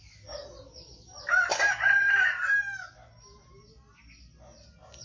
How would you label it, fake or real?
real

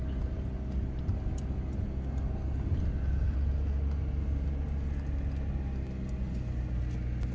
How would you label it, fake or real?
real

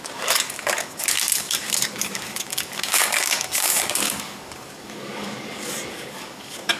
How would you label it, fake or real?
fake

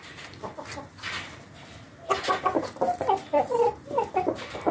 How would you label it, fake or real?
real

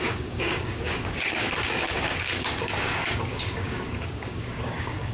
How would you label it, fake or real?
fake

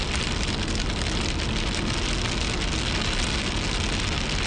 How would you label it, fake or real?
real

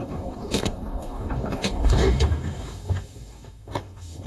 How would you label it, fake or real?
fake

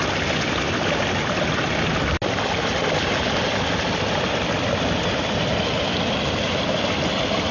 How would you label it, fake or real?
real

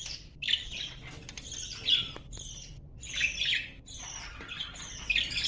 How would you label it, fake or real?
real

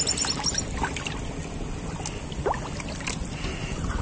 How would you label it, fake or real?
real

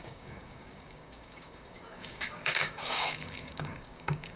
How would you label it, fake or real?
fake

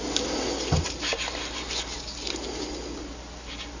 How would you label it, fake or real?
real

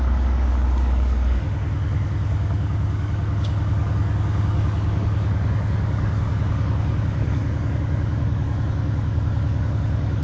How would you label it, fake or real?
fake